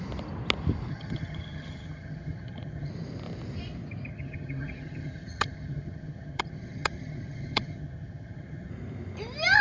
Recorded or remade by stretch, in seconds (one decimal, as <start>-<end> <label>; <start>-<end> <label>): 0.0-0.9 recorded; 0.9-2.9 remade; 2.9-4.1 recorded; 4.1-8.7 remade; 8.7-9.6 recorded